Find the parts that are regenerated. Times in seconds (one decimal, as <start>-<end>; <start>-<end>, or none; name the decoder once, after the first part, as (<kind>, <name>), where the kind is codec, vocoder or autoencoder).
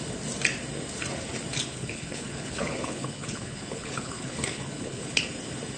1.7-5.2 (codec, HILCodec)